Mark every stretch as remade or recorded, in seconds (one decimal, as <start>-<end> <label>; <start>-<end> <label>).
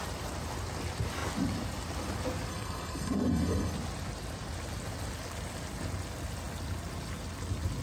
0.0-2.5 recorded; 2.5-3.7 remade; 3.7-7.8 recorded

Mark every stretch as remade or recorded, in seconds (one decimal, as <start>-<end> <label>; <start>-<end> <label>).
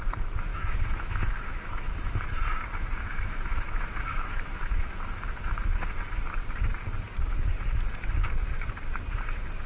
0.0-0.5 recorded; 0.5-2.3 remade; 2.3-3.0 recorded; 3.0-5.6 remade; 5.6-9.7 recorded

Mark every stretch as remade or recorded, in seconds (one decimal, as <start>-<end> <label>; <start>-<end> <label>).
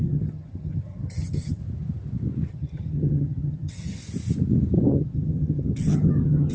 0.0-1.6 remade; 1.6-2.5 recorded; 2.5-4.0 remade; 4.0-4.9 recorded; 4.9-6.5 remade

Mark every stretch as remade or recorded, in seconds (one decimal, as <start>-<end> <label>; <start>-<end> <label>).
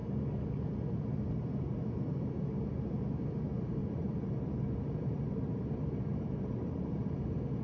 0.0-3.8 recorded; 3.8-7.1 remade; 7.1-7.6 recorded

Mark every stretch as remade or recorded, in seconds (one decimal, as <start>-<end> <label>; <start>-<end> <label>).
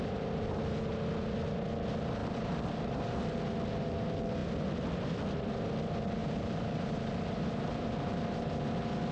0.0-2.2 recorded; 2.2-3.2 remade; 3.2-6.2 recorded; 6.2-8.5 remade; 8.5-9.1 recorded